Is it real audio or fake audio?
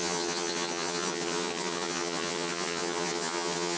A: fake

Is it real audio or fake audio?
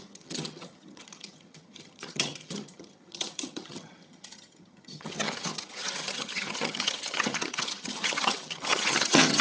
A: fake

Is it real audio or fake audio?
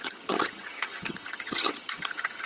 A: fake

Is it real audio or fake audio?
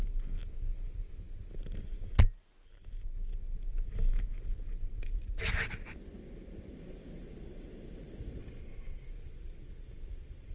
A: real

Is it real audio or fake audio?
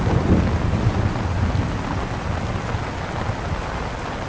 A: real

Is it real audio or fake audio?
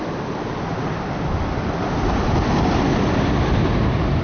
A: real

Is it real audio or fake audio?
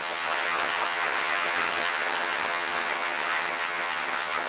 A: fake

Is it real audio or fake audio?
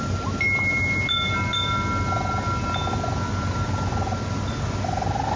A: real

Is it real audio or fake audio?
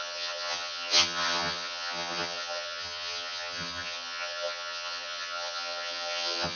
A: fake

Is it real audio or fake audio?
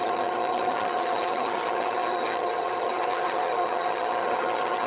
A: fake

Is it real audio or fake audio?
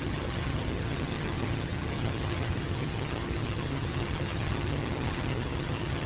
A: fake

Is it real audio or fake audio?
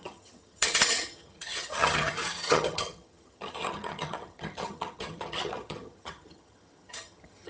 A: fake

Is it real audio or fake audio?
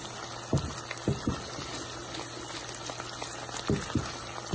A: real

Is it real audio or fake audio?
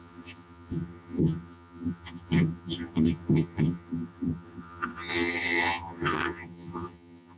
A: fake